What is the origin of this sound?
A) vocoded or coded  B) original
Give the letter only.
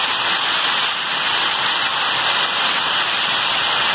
B